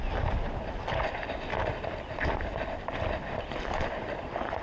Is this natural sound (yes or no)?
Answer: yes